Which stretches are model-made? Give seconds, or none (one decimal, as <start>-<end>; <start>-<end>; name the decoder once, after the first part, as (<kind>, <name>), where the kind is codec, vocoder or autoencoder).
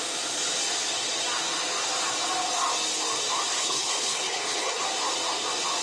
3.5-4.8 (codec, HILCodec)